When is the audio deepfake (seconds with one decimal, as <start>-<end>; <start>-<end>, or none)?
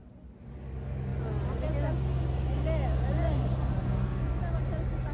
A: 3.8-4.4